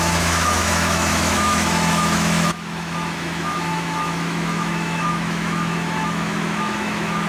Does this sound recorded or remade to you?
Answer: remade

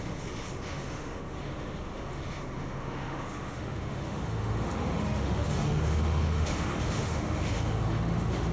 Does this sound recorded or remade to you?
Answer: remade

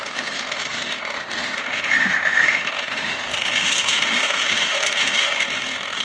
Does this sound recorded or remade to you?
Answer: remade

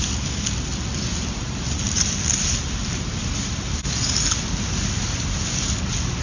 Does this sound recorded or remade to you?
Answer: recorded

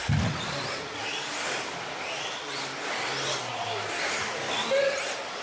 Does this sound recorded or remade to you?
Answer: recorded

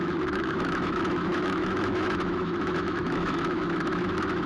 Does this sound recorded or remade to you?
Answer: remade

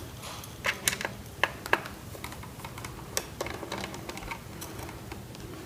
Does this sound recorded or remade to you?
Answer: recorded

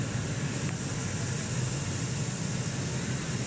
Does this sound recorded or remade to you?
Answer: recorded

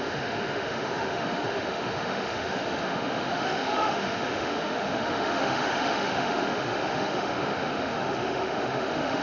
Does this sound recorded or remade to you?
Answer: remade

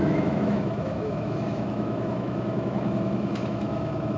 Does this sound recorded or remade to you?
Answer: remade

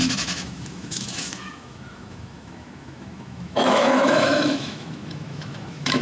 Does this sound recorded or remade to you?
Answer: remade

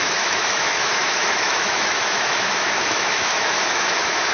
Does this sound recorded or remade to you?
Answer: remade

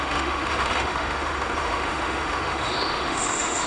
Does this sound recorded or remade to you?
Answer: remade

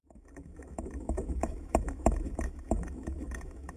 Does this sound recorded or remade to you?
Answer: remade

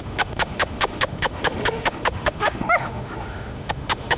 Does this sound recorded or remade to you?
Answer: remade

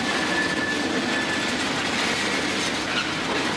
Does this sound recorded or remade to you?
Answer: recorded